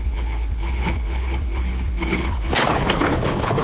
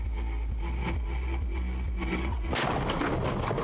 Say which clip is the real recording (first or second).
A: second